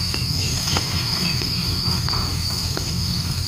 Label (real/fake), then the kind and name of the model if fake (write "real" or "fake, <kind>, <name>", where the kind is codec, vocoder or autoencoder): fake, codec, DAC